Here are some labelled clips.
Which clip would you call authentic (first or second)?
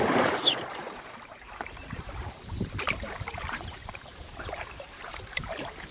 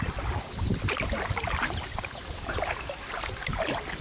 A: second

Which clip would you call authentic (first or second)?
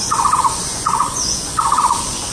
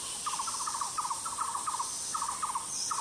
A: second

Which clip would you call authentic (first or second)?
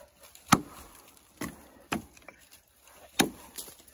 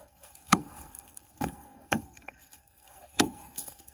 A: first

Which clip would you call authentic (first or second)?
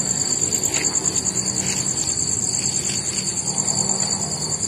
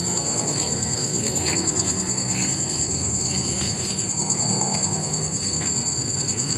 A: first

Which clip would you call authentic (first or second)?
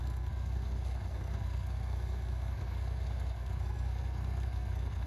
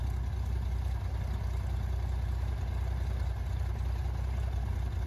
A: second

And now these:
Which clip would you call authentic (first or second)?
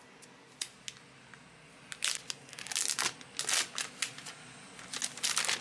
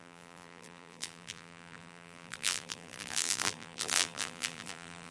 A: first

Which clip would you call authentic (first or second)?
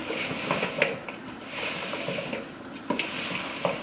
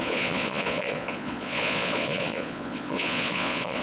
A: first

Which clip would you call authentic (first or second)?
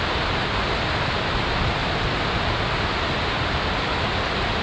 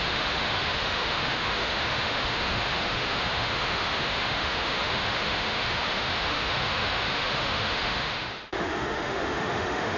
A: first